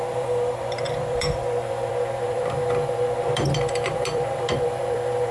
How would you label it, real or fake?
fake